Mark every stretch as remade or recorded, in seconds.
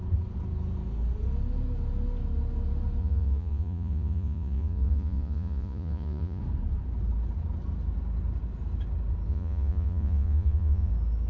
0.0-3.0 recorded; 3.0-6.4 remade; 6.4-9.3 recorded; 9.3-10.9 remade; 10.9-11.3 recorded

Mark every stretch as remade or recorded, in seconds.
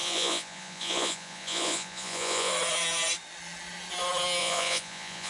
0.0-2.5 remade; 2.5-4.4 recorded; 4.4-5.3 remade